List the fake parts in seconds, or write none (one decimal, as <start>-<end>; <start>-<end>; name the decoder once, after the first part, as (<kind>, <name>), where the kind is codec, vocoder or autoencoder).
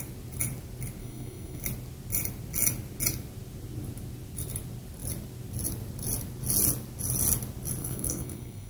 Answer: 1.0-1.6 (codec, SNAC); 7.8-8.7